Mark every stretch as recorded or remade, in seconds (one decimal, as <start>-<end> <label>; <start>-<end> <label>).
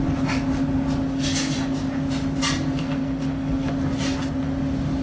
0.0-2.8 recorded; 2.8-3.7 remade; 3.7-5.0 recorded